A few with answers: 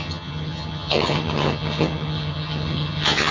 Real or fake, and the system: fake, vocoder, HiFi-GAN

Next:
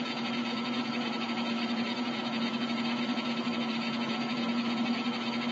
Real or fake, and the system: fake, vocoder, Vocos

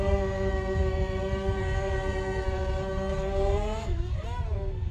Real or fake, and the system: fake, codec, SNAC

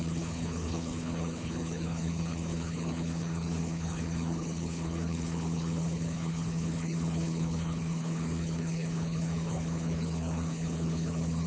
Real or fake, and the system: fake, codec, HILCodec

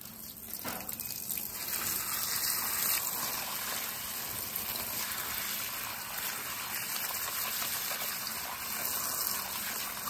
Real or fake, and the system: real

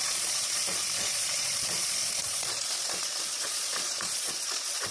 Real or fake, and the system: fake, vocoder, Vocos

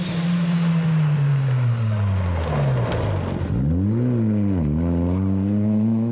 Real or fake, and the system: real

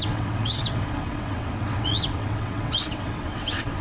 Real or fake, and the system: fake, vocoder, WaveNeXt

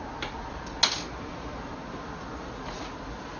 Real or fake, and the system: real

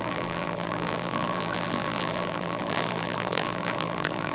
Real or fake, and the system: fake, vocoder, BigVGAN v2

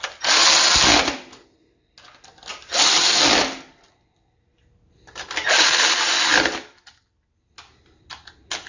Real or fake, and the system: real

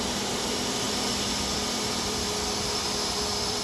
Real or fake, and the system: fake, vocoder, BigVGAN v2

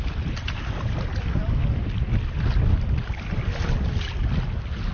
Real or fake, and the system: real